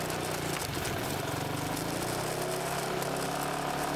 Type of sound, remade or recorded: recorded